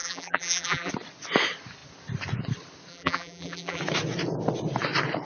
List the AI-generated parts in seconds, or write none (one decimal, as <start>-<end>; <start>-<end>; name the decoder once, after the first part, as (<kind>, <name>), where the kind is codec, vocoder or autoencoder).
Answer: 0.0-0.9 (vocoder, BigVGAN v2); 2.9-3.8